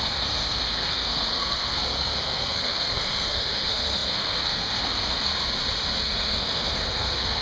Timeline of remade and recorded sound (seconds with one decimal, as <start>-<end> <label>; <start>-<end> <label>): 0.0-5.3 remade; 5.3-6.0 recorded; 6.0-7.4 remade